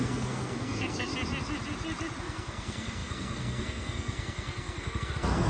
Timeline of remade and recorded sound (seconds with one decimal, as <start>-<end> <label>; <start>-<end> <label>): 0.0-1.1 remade; 1.1-2.2 recorded; 2.2-5.5 remade